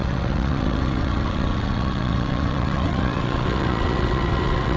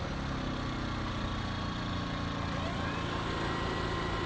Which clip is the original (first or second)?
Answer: second